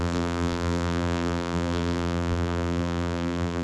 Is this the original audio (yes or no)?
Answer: no